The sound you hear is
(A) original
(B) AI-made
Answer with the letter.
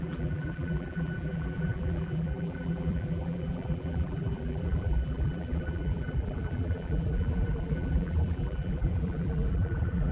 B